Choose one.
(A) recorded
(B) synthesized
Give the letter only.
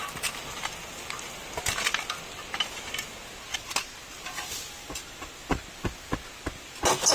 A